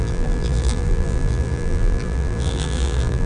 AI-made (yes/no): yes